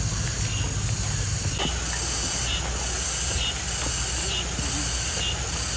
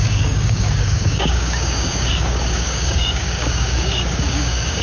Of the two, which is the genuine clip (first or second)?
first